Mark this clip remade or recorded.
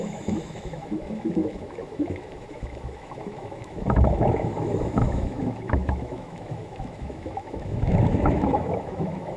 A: remade